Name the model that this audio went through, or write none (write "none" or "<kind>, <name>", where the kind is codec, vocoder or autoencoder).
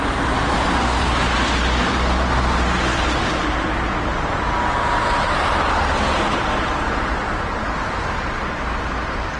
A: none